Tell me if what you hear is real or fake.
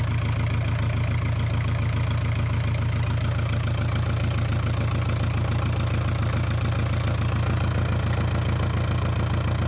real